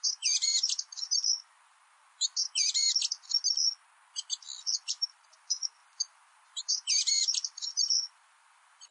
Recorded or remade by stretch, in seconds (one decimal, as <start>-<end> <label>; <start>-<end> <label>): 0.0-2.3 remade; 2.3-4.8 recorded; 4.8-8.9 remade